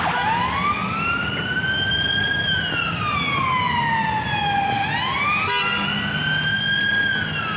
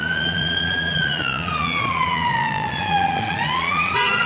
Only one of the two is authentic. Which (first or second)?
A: first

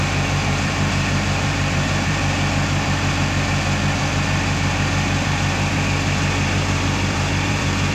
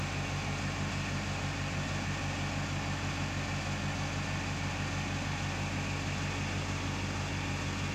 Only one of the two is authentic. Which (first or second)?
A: second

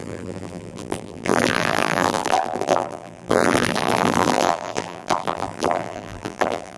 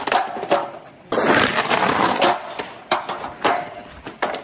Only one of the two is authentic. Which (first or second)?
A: second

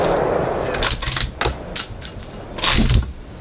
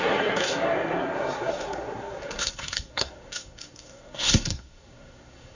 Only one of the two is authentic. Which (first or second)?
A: first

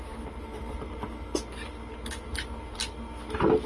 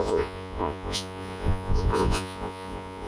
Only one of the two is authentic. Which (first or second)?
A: first